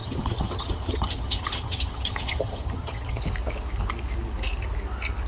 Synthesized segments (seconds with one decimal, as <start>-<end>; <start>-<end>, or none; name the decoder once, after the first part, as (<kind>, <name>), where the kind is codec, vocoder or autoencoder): 0.0-3.2 (vocoder, HiFi-GAN)